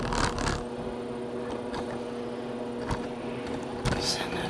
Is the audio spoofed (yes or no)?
no